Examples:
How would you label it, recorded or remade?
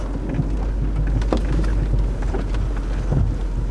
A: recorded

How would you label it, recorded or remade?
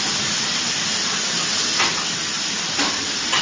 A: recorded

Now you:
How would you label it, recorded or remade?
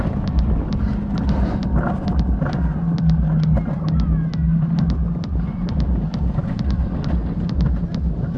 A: recorded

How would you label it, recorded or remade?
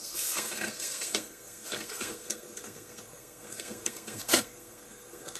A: remade